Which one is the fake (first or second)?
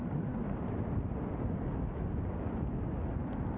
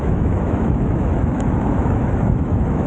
second